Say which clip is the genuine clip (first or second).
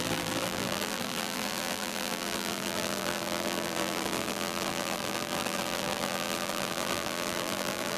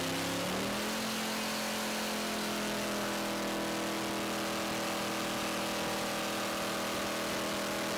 second